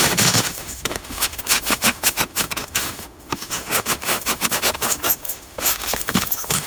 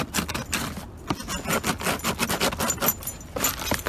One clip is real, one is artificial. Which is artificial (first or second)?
first